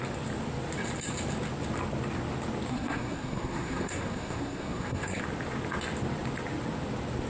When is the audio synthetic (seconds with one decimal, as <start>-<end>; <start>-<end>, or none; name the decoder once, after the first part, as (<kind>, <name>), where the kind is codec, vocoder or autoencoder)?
2.7-5.2 (codec, SNAC)